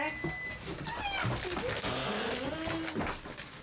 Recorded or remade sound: recorded